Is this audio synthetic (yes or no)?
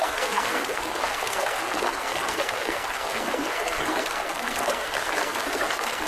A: yes